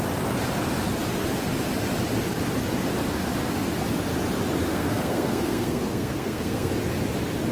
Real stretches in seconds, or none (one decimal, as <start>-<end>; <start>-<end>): 0.0-4.7; 6.7-7.5